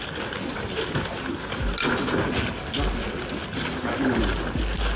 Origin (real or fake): real